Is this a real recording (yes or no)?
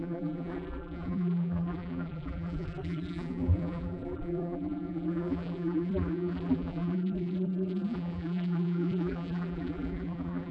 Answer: no